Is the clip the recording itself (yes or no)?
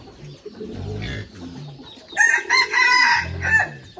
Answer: yes